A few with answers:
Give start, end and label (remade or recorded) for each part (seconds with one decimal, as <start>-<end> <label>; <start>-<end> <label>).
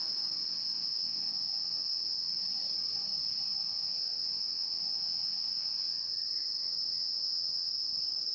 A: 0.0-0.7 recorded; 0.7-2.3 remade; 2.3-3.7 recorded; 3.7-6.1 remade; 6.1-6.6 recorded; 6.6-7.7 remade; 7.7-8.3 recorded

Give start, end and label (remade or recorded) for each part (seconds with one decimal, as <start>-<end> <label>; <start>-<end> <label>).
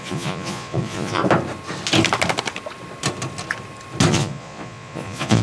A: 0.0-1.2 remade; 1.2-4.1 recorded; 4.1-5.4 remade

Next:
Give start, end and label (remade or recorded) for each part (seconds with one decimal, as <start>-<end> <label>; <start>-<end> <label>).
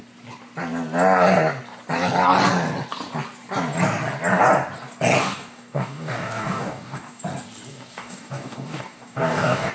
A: 0.0-5.2 recorded; 5.2-7.2 remade; 7.2-7.7 recorded; 7.7-9.7 remade